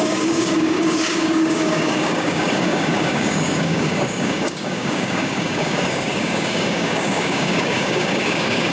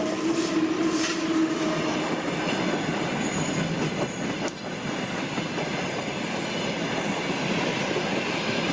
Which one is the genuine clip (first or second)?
second